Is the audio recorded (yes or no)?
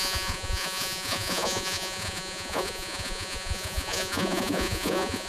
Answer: no